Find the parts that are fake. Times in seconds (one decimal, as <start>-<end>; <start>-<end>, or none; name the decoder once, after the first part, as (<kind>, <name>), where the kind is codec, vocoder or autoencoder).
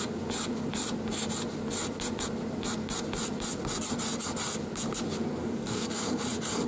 5.4-6.2 (codec, DAC)